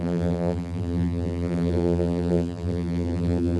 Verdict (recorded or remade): remade